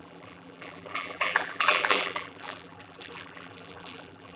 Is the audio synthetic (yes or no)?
yes